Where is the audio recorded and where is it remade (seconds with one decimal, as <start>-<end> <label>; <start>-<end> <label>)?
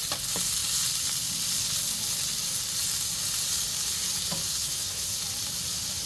0.0-4.5 recorded; 4.5-5.2 remade; 5.2-6.1 recorded